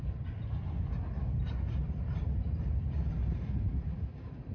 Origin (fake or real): real